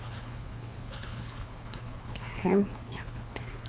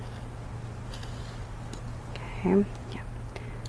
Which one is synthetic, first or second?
first